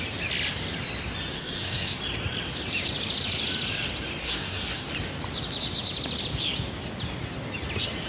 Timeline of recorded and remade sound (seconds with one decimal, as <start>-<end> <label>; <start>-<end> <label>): 0.0-1.3 recorded; 1.3-2.0 remade; 2.0-4.2 recorded; 4.2-4.9 remade; 4.9-8.1 recorded